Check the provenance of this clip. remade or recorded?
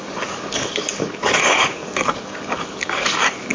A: remade